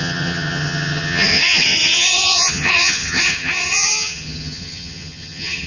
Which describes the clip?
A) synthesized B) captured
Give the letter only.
A